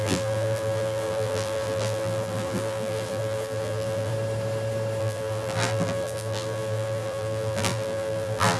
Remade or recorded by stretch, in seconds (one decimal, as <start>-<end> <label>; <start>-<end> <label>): 0.0-4.1 remade; 4.1-5.0 recorded; 5.0-8.6 remade